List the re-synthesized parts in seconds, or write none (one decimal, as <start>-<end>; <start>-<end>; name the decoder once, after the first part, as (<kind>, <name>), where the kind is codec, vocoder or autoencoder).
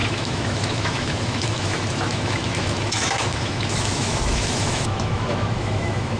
0.0-6.2 (autoencoder, DAC-VAE)